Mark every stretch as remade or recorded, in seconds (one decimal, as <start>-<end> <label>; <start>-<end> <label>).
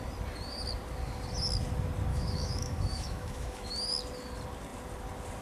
0.0-2.1 recorded; 2.1-3.7 remade; 3.7-5.4 recorded